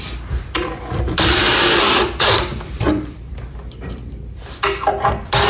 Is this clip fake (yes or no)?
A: yes